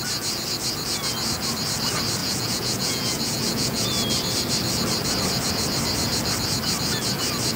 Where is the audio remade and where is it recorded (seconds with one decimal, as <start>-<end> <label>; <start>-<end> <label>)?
0.0-2.2 recorded; 2.2-3.9 remade; 3.9-7.6 recorded